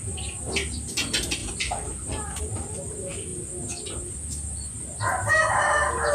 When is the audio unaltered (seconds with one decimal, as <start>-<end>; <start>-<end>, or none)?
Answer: 0.0-6.1

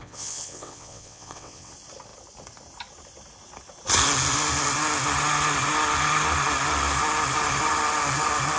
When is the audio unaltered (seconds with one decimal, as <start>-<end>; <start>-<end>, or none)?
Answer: 1.7-8.6

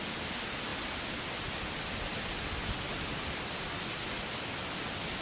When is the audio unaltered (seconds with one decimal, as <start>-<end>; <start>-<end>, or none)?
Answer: 0.0-5.2

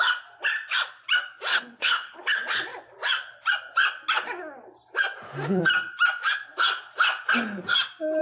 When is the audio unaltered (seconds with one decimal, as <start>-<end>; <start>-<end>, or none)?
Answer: 0.0-1.5; 2.2-8.2

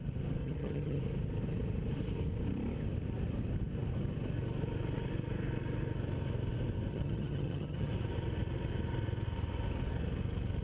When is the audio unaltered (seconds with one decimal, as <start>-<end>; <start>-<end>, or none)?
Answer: 0.0-0.4; 1.0-6.9; 7.9-10.6

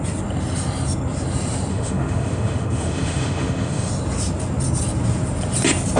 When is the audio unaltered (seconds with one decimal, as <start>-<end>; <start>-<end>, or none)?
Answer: 0.0-1.7; 3.9-6.0

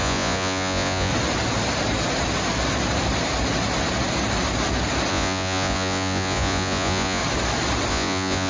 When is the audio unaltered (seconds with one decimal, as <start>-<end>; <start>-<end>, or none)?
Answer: 1.1-5.1; 7.2-7.9